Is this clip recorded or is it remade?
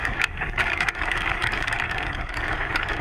remade